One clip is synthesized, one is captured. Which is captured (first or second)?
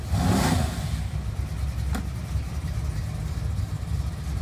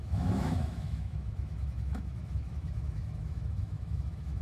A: first